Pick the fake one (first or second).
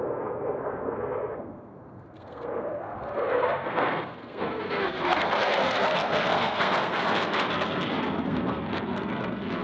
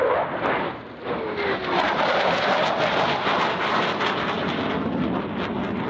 first